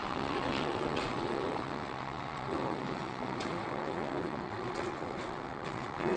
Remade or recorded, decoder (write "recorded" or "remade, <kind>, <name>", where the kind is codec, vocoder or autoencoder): remade, vocoder, WaveNeXt